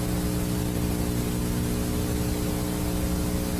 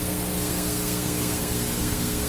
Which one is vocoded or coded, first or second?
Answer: second